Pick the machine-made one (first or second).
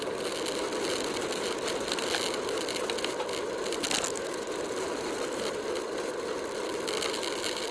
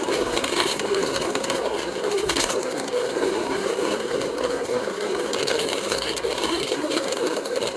second